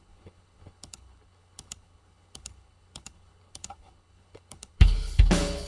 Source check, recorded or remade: remade